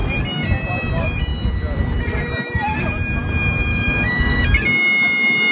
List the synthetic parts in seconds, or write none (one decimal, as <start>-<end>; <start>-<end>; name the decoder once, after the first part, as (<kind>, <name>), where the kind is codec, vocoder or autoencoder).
3.7-4.4 (codec, DAC)

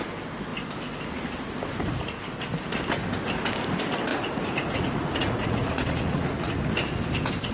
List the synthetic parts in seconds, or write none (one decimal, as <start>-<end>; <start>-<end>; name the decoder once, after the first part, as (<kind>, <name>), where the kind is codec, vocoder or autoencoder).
4.1-6.6 (vocoder, Vocos)

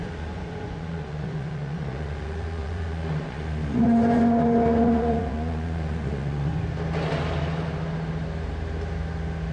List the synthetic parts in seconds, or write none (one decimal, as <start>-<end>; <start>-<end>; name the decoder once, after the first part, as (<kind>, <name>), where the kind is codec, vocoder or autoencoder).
0.0-6.5 (vocoder, Vocos)